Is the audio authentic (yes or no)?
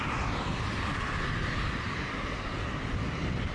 no